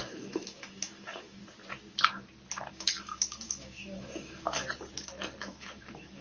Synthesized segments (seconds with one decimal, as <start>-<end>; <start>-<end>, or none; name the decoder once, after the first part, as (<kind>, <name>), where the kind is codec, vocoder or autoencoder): 0.0-1.4 (autoencoder, DAC-VAE); 2.7-4.6; 5.4-6.2